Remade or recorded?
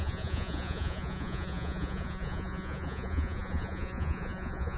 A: remade